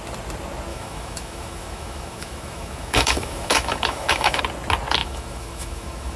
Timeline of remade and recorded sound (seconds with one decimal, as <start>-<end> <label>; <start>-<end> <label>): 0.0-0.7 recorded; 0.7-4.4 remade; 4.4-5.0 recorded; 5.0-6.2 remade